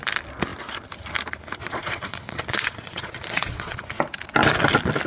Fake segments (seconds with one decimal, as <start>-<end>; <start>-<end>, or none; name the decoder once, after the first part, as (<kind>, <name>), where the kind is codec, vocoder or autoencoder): 1.6-4.0 (vocoder, Vocos)